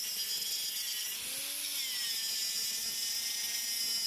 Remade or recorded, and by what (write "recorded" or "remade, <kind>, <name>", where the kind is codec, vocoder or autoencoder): recorded